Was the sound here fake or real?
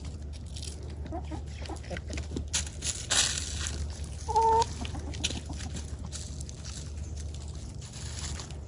real